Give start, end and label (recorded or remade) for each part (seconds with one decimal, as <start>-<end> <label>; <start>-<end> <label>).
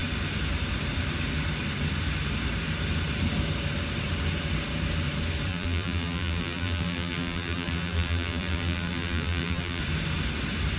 0.0-5.5 recorded; 5.5-9.8 remade; 9.8-10.8 recorded